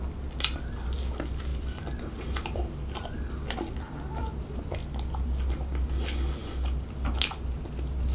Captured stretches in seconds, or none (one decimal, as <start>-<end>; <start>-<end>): 0.0-1.5; 4.9-8.1